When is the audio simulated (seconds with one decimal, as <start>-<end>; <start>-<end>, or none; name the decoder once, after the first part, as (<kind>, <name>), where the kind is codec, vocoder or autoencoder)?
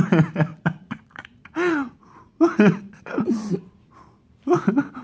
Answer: 0.5-3.5 (vocoder, Vocos)